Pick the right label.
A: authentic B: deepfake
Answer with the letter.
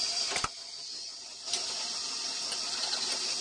A